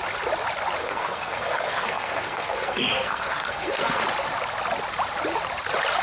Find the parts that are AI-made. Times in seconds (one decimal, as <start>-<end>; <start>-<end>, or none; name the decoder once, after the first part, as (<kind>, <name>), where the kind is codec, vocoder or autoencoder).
0.8-4.0 (codec, SNAC)